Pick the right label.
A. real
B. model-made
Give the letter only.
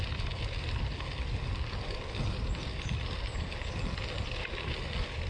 A